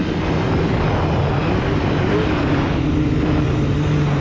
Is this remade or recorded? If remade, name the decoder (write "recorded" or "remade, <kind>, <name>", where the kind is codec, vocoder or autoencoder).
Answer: recorded